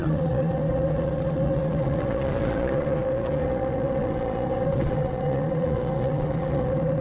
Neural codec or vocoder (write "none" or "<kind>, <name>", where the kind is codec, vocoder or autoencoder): vocoder, Vocos